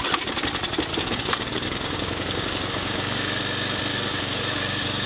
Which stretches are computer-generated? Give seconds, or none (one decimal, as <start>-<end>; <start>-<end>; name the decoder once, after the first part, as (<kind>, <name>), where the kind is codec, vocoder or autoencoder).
0.9-3.4 (codec, DAC); 3.9-5.1